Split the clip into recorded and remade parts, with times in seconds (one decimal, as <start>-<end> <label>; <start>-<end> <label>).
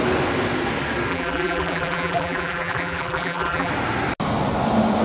0.0-1.1 recorded; 1.1-3.7 remade; 3.7-5.0 recorded